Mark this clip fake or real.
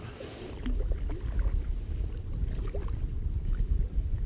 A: real